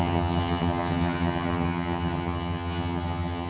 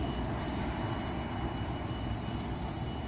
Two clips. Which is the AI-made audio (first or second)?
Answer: first